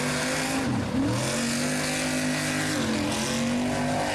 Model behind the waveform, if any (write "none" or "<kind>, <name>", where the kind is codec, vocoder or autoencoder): none